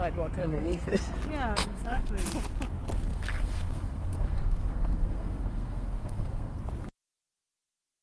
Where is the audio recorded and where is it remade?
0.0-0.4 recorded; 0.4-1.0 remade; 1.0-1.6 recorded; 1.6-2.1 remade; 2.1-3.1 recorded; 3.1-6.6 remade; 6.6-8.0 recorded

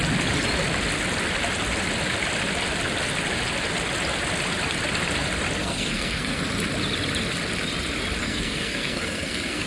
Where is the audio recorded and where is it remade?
0.0-5.6 recorded; 5.6-6.4 remade; 6.4-8.2 recorded; 8.2-9.7 remade

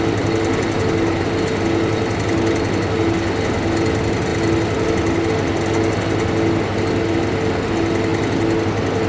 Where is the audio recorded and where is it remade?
0.0-9.1 recorded

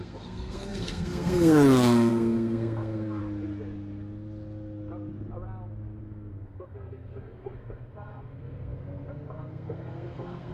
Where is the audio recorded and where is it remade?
0.0-3.2 remade; 3.2-6.0 recorded; 6.0-10.5 remade

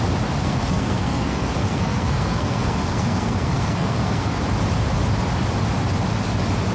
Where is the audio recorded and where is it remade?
0.0-0.4 recorded; 0.4-4.4 remade; 4.4-6.7 recorded

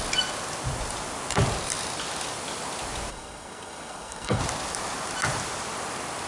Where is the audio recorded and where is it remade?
0.0-3.1 recorded; 3.1-4.4 remade; 4.4-6.3 recorded

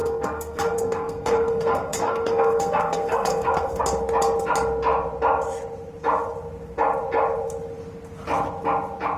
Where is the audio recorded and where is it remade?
0.0-3.8 remade; 3.8-9.2 recorded